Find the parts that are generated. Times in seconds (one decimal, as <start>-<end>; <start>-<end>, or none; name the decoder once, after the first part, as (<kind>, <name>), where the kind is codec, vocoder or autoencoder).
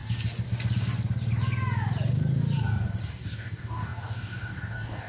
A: 3.1-5.1 (codec, DAC)